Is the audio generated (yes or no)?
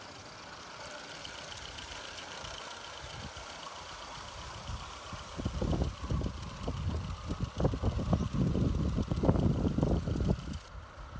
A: no